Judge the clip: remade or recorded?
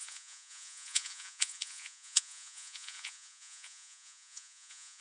remade